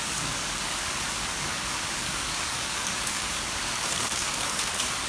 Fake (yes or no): yes